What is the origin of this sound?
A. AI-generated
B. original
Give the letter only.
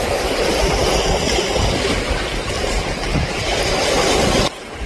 B